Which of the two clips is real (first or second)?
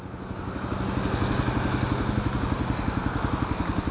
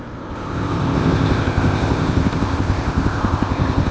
first